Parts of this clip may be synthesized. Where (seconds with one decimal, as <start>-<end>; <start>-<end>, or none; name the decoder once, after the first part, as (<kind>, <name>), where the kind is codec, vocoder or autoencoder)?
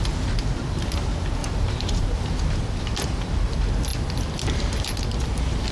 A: 1.4-2.4 (vocoder, BigVGAN v2)